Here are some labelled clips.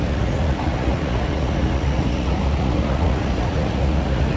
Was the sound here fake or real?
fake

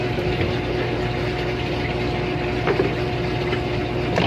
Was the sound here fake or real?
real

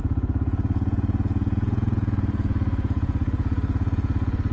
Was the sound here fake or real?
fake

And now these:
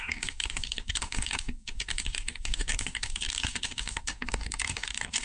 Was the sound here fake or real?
fake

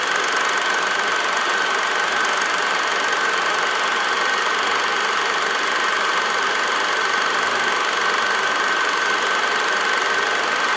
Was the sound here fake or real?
real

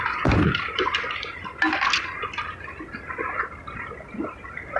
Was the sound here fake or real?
real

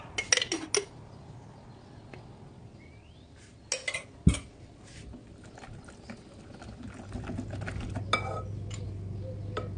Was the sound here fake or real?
real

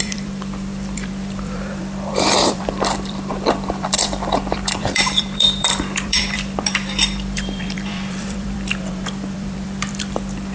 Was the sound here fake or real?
fake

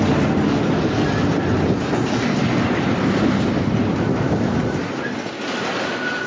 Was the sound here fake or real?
real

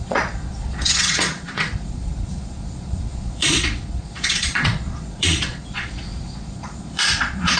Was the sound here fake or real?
fake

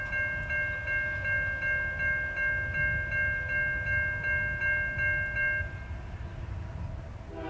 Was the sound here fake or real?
real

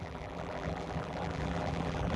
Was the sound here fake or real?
fake